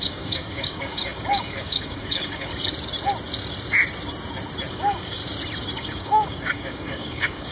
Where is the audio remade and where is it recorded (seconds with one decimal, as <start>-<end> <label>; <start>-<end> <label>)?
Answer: 0.0-2.5 remade; 2.5-4.7 recorded; 4.7-5.2 remade; 5.2-5.8 recorded; 5.8-7.5 remade